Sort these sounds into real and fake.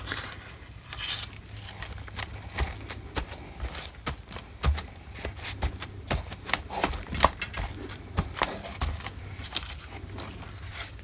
real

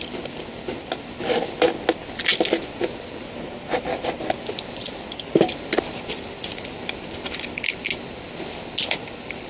real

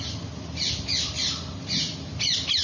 real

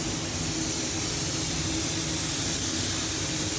real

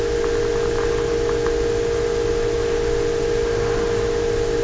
real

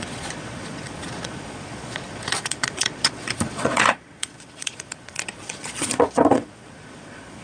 fake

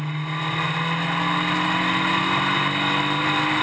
real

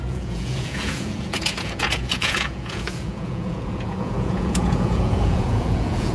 fake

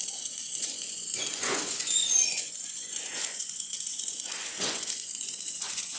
fake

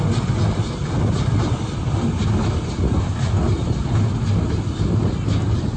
real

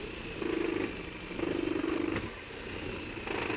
real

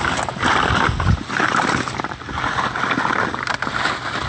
real